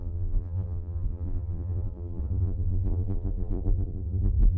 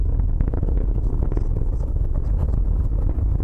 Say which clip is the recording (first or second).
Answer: second